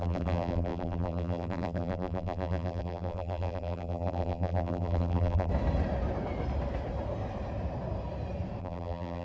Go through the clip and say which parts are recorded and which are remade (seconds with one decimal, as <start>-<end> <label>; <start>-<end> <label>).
0.0-5.5 remade; 5.5-8.6 recorded; 8.6-9.2 remade